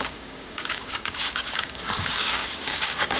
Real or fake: fake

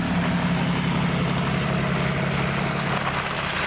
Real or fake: real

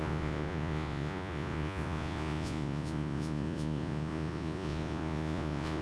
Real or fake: fake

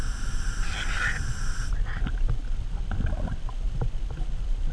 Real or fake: real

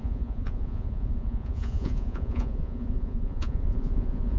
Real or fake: fake